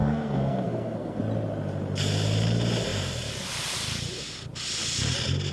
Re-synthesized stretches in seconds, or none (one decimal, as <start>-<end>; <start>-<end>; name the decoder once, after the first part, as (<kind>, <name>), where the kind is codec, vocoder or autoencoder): 0.0-1.2 (codec, SNAC)